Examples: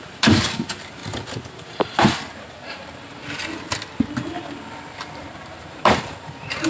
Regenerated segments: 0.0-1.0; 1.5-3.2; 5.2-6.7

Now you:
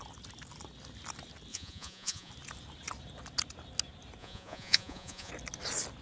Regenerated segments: 1.5-2.3; 4.2-5.3

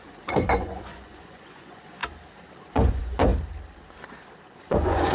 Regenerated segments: 0.0-2.0; 2.7-3.3; 4.6-5.1

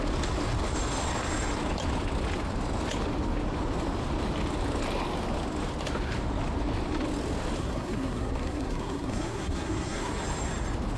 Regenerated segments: 7.6-10.1

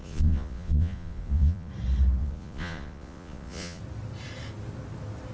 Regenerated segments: 0.0-1.7; 2.2-3.8

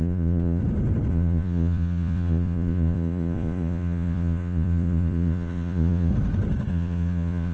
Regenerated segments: 0.0-0.6; 1.1-6.1; 6.7-7.5